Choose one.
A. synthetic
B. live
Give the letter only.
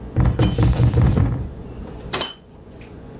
A